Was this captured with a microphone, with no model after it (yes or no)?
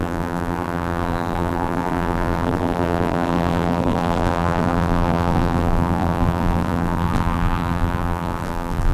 no